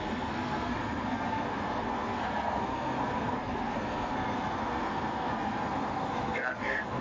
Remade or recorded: remade